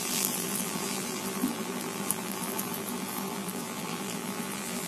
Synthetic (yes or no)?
yes